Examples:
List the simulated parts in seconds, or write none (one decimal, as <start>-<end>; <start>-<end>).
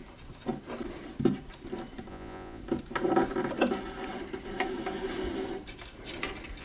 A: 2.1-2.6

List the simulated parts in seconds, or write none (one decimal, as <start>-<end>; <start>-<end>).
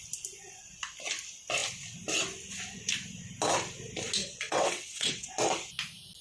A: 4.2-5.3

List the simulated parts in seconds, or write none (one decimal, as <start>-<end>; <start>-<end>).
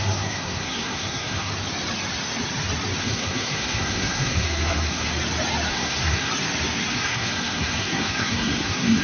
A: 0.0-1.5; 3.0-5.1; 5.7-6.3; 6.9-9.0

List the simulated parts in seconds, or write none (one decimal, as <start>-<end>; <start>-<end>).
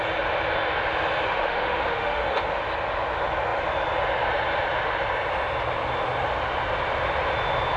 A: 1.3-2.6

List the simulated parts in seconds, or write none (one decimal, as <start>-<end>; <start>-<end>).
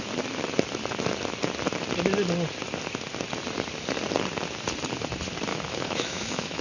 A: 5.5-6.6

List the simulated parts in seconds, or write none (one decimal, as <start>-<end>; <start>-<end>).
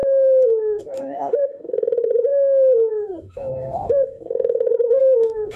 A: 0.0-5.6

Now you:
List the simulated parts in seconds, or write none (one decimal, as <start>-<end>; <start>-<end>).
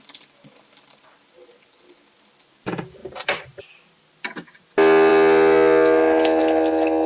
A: 3.0-3.6